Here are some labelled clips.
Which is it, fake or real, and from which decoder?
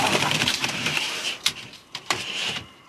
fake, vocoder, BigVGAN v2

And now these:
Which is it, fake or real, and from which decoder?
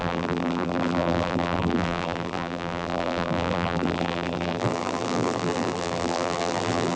fake, vocoder, BigVGAN v2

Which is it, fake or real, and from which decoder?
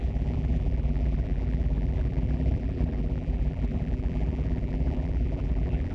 fake, vocoder, BigVGAN v2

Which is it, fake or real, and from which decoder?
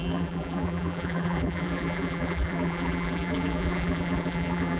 fake, vocoder, BigVGAN v2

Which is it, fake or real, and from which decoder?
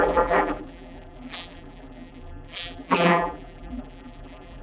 fake, vocoder, BigVGAN v2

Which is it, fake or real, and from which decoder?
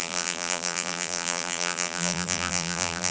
fake, vocoder, BigVGAN v2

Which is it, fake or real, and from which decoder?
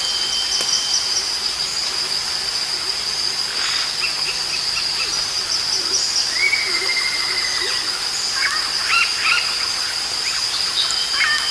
real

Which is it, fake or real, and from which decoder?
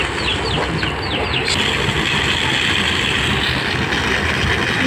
real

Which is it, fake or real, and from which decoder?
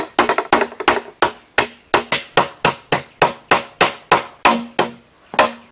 real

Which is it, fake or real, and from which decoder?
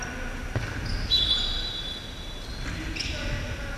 real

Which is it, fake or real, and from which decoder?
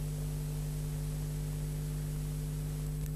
real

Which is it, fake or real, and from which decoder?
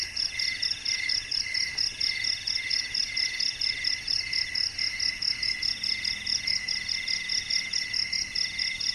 real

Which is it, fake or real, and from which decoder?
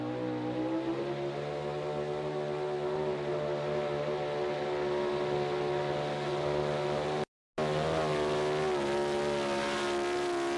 real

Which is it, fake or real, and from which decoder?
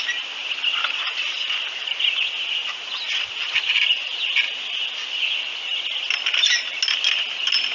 real